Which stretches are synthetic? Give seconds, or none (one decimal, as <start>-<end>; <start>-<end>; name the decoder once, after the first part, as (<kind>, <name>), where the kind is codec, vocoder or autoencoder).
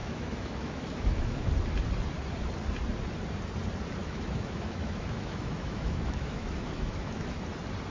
0.0-1.5 (autoencoder, DAC-VAE); 4.0-7.4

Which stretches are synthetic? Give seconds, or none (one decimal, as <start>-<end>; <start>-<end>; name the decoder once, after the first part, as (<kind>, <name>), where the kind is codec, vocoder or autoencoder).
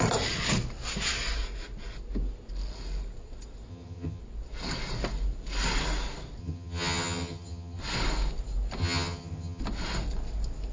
3.7-4.2 (vocoder, HiFi-GAN); 6.4-7.8; 8.8-9.6